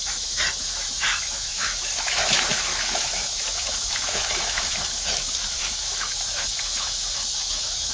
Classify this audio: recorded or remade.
remade